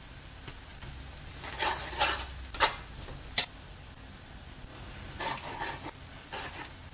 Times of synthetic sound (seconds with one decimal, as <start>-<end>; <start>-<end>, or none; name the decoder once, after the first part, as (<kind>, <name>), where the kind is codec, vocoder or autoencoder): none